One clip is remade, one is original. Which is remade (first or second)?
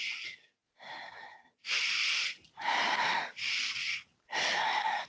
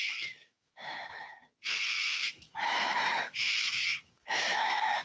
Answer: second